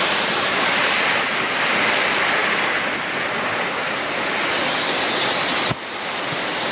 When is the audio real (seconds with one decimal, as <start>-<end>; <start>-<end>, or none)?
0.0-6.7